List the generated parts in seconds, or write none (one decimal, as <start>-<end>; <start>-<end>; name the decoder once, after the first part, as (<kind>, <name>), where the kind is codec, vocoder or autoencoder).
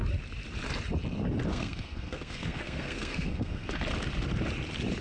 1.5-3.8 (codec, SNAC)